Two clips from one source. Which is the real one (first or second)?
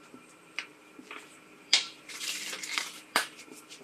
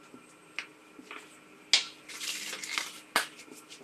second